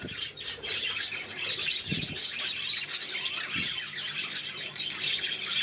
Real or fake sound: real